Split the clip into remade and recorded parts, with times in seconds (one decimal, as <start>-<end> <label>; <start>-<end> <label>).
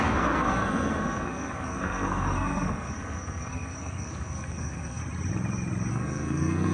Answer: 0.0-5.0 remade; 5.0-5.9 recorded; 5.9-6.7 remade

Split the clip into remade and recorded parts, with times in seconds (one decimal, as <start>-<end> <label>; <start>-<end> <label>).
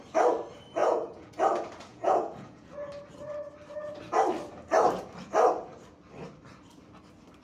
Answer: 0.0-0.8 recorded; 0.8-1.3 remade; 1.3-1.9 recorded; 1.9-2.9 remade; 2.9-7.4 recorded